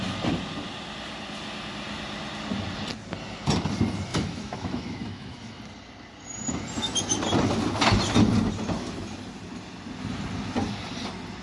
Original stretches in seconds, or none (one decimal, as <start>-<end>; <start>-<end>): 0.0-4.1; 5.6-11.4